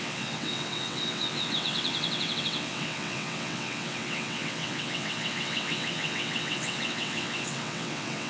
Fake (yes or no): yes